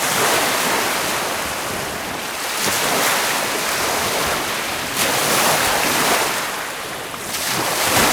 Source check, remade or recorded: recorded